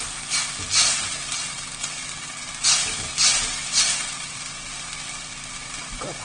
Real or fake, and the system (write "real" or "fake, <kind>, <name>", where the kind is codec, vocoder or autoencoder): real